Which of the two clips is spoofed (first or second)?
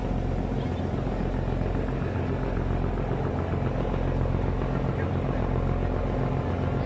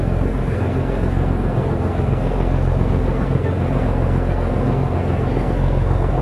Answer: second